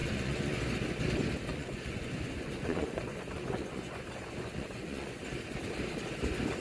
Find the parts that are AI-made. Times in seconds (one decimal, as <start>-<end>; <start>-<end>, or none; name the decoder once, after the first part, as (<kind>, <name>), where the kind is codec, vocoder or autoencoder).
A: 0.0-0.6 (vocoder, Vocos); 1.5-5.2